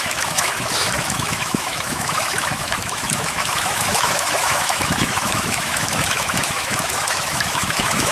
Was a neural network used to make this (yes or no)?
yes